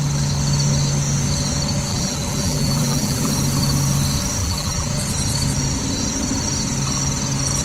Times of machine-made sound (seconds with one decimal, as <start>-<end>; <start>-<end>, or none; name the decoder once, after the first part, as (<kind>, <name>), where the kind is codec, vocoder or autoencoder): 1.9-3.3 (vocoder, BigVGAN v2); 4.4-4.9